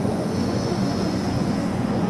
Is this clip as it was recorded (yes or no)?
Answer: no